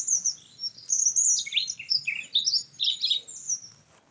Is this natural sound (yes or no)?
yes